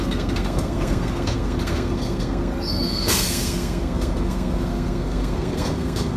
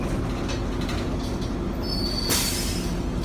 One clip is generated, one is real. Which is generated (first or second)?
first